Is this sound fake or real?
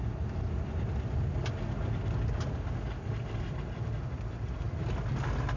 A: real